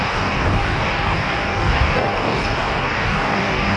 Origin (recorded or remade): remade